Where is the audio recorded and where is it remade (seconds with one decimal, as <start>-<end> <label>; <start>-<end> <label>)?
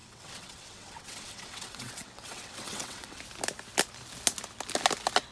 0.0-3.2 remade; 3.2-5.3 recorded